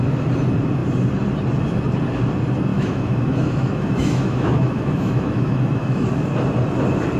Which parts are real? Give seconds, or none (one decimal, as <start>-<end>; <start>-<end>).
0.0-2.7; 6.1-7.2

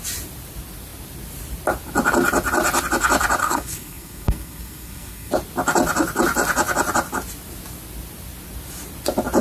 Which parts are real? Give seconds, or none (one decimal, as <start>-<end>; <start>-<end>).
0.0-3.4; 5.3-9.4

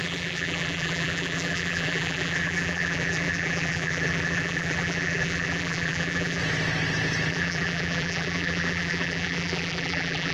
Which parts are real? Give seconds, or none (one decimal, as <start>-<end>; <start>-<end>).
6.4-7.3

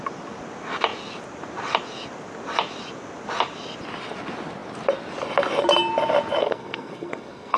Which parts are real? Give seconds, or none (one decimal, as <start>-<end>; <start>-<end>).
0.0-6.4

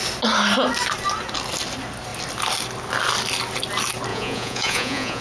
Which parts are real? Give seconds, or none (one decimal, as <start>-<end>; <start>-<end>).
0.0-4.1